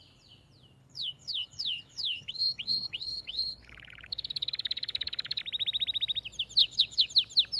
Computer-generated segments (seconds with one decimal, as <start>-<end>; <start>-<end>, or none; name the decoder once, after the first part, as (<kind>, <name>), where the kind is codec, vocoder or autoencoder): 0.8-5.4 (codec, HILCodec); 6.6-7.1